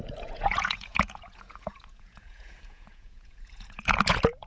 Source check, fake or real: fake